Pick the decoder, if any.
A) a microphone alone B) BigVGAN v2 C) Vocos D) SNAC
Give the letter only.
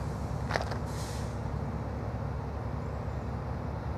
A